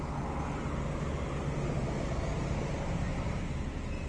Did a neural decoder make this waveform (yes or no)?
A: no